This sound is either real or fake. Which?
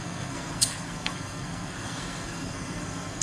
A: fake